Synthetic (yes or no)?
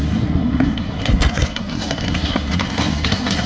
yes